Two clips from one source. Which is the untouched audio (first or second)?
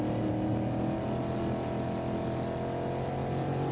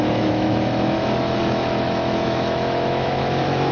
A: first